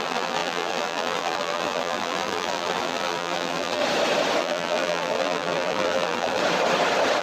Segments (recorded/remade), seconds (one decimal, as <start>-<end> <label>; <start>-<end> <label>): 0.0-3.8 remade; 3.8-4.4 recorded; 4.4-6.4 remade; 6.4-7.2 recorded